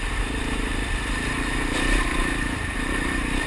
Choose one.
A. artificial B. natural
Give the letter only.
A